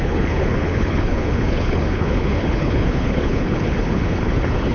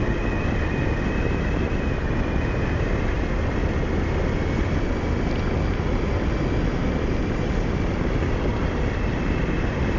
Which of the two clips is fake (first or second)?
first